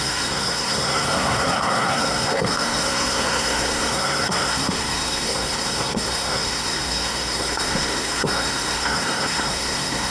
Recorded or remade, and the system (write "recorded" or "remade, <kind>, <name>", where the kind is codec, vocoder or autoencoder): remade, codec, SNAC